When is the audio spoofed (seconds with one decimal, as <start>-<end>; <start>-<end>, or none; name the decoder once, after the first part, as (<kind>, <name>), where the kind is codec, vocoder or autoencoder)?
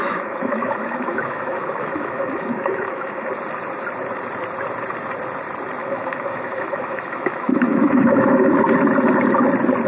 0.0-3.3 (autoencoder, DAC-VAE); 5.8-8.5